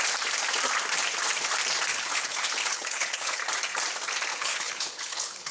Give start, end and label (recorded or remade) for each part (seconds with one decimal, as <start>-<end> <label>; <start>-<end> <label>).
0.0-1.9 recorded; 1.9-3.4 remade; 3.4-4.3 recorded; 4.3-5.5 remade